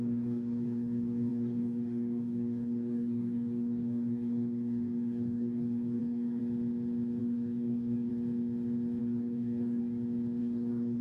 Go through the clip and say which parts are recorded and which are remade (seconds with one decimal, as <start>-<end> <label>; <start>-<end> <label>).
0.0-6.4 remade; 6.4-7.2 recorded; 7.2-8.1 remade; 8.1-9.0 recorded; 9.0-9.8 remade; 9.8-10.4 recorded; 10.4-11.0 remade